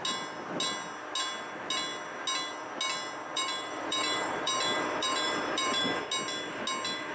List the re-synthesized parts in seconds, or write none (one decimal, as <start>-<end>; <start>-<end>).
3.3-6.0